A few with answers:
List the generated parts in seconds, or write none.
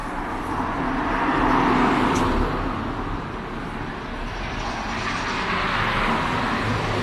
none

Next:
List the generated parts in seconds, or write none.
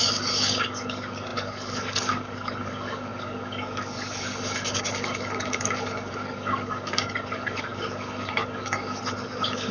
0.0-9.7 (codec, DAC)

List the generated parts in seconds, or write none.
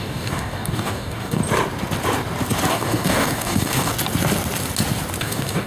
0.0-1.4 (codec, DAC); 2.7-3.9; 5.2-5.7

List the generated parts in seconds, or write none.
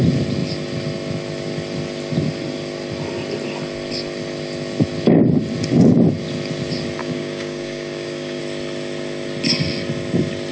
7.0-8.4 (codec, DAC)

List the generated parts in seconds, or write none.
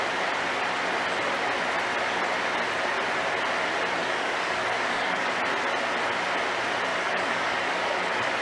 4.0-5.3 (codec, DAC); 6.9-8.4